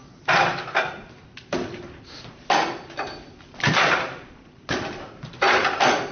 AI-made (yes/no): no